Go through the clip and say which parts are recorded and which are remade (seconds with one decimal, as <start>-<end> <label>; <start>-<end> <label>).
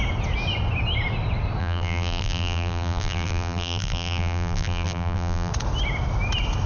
0.0-1.6 recorded; 1.6-5.5 remade; 5.5-6.7 recorded